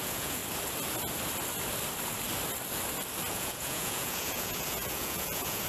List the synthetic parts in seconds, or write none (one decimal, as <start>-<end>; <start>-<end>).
0.0-0.4; 3.3-5.7